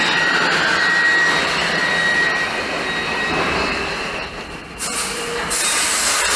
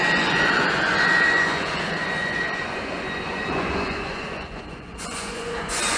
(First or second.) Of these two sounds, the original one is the first